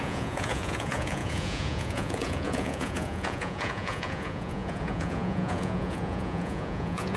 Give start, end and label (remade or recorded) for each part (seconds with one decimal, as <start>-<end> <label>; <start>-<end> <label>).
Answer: 0.0-7.2 remade